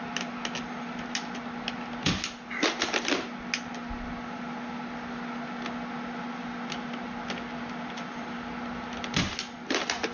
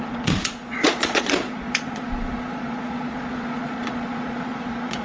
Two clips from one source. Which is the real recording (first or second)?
first